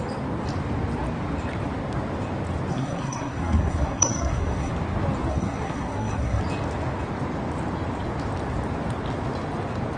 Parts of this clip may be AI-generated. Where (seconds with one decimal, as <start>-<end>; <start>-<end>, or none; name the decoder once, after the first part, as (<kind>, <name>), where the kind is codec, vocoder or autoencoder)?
2.7-4.7 (codec, SNAC); 5.3-6.4